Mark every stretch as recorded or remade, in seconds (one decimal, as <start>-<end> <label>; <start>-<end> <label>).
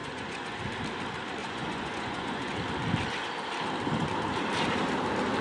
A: 0.0-0.6 remade; 0.6-1.4 recorded; 1.4-2.6 remade; 2.6-5.4 recorded